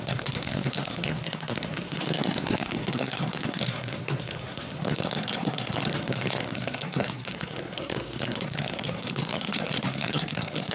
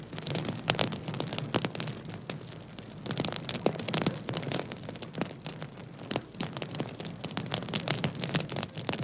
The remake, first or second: first